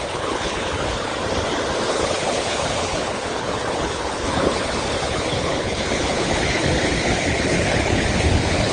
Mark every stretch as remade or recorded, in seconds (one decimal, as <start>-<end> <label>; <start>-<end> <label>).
0.0-1.1 remade; 1.1-1.9 recorded; 1.9-8.7 remade